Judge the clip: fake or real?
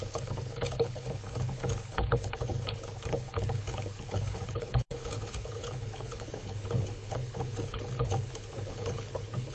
fake